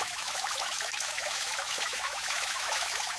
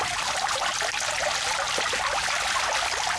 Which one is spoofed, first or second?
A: first